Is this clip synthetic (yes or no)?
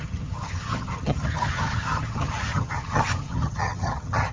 yes